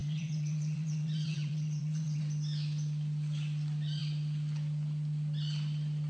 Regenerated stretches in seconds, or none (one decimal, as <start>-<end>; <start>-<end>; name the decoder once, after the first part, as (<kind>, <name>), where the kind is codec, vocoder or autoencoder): 0.0-2.2 (vocoder, WaveNeXt)